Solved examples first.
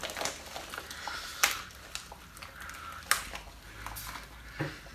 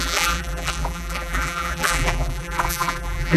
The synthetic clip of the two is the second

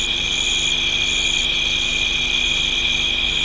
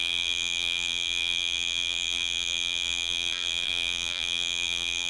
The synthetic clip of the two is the second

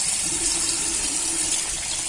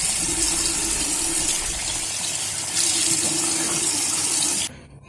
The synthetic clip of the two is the first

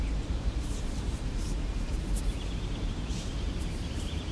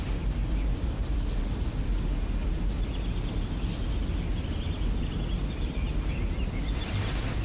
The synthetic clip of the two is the first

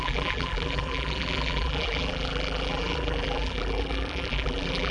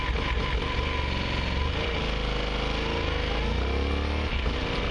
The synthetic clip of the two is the first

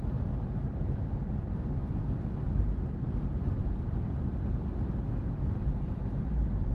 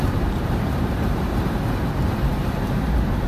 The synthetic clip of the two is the second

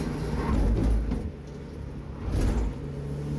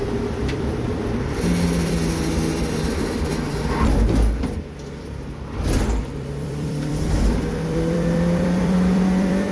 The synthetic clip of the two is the second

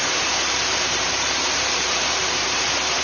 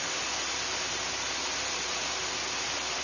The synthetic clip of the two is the first